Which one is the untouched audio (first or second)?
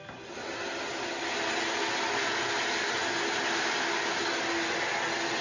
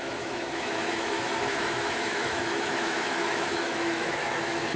first